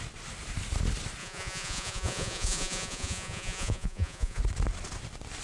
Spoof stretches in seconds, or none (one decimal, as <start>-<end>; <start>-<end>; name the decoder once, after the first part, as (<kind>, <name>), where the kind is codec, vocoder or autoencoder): 1.2-4.4 (vocoder, Vocos)